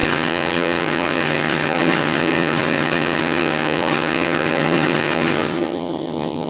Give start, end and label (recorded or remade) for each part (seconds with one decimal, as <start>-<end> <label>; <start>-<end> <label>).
0.0-6.5 remade